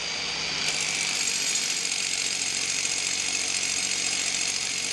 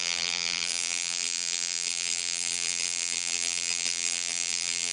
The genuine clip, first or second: first